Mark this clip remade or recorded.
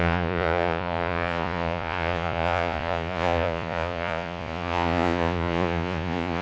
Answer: remade